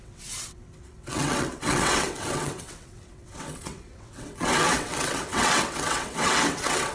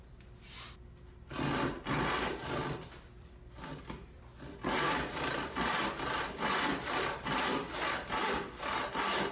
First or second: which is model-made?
first